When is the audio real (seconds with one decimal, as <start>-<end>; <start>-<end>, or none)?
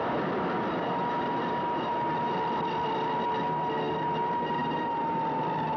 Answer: 0.0-5.8